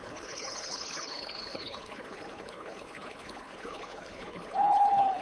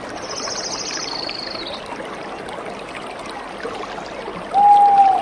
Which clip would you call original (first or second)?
second